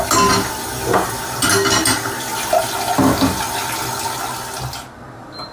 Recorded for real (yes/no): yes